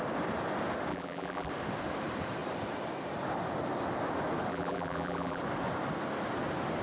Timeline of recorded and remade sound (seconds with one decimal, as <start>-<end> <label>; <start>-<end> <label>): 0.0-0.9 recorded; 0.9-1.5 remade; 1.5-4.5 recorded; 4.5-5.4 remade; 5.4-6.8 recorded